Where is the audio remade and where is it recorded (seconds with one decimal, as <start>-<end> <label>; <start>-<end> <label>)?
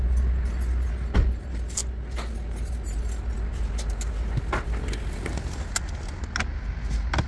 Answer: 0.0-7.3 recorded